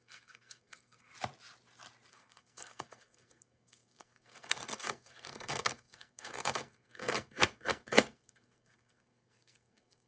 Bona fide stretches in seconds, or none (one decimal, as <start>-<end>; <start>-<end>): 1.1-2.1